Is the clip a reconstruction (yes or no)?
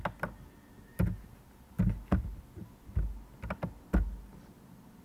no